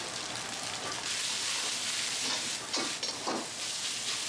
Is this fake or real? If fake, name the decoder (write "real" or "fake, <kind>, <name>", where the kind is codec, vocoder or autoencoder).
real